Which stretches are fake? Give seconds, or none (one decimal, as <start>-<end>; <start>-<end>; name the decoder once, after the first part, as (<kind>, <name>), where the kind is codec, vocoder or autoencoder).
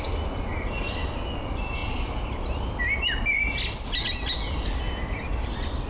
none